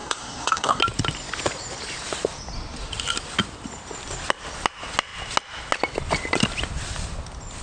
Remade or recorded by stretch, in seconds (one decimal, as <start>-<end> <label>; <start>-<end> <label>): 0.0-0.8 remade; 0.8-7.6 recorded